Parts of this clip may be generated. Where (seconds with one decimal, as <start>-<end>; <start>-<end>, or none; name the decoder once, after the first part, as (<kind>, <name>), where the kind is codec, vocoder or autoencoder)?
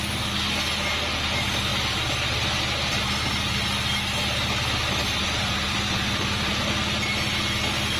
5.0-6.5 (vocoder, BigVGAN v2)